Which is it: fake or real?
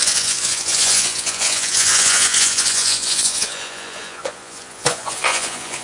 fake